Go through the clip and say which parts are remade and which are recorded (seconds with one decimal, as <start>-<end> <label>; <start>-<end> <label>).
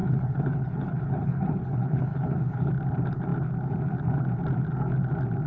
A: 0.0-2.7 remade; 2.7-5.5 recorded